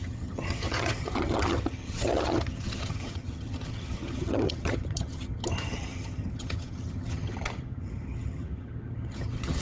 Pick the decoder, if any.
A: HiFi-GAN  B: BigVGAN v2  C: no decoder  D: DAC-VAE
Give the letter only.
A